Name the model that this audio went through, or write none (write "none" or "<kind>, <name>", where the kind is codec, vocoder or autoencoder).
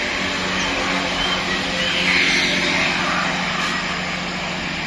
none